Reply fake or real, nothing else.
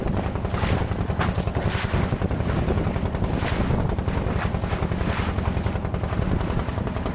real